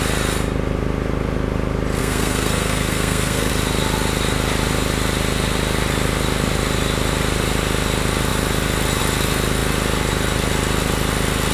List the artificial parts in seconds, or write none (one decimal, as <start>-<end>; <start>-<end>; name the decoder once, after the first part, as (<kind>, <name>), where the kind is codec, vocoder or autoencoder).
2.0-3.5 (codec, SNAC)